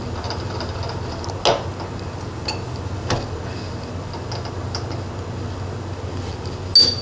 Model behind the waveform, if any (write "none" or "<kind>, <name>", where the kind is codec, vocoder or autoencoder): none